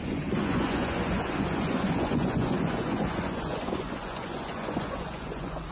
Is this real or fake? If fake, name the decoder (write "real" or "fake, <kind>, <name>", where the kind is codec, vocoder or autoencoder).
fake, vocoder, Vocos